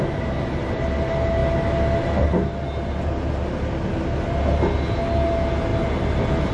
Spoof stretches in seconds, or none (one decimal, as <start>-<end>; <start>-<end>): none